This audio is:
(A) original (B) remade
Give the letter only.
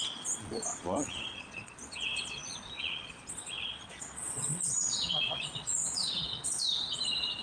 B